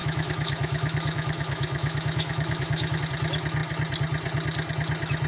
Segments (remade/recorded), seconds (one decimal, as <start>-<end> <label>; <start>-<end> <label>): 0.0-3.0 remade; 3.0-5.3 recorded